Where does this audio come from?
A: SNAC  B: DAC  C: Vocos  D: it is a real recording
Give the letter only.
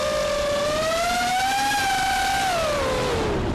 D